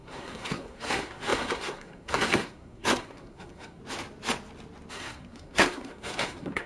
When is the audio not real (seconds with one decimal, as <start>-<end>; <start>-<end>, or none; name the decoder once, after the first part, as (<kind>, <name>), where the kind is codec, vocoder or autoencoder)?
0.0-3.8 (codec, SNAC); 4.9-6.7